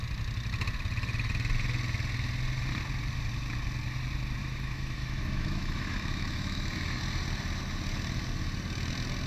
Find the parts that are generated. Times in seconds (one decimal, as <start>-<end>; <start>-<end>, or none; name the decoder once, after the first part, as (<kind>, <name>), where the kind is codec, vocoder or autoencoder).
4.4-7.0 (autoencoder, DAC-VAE)